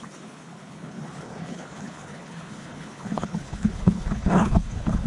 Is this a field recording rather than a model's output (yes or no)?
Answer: no